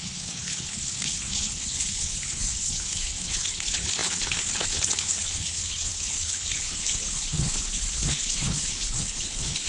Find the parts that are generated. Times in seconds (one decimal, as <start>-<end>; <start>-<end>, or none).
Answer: 0.0-9.7